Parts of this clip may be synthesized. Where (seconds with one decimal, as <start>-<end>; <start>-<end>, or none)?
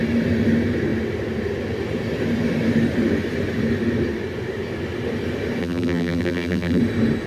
5.6-6.8